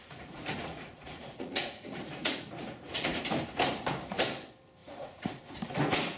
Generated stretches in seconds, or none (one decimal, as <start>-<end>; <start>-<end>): 0.0-3.2; 4.8-5.4